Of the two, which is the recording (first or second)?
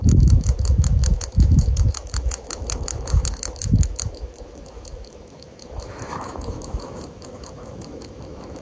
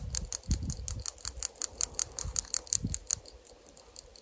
second